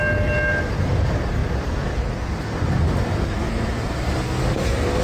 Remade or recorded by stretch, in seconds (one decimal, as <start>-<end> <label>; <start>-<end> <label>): 0.0-1.4 recorded; 1.4-4.4 remade; 4.4-5.0 recorded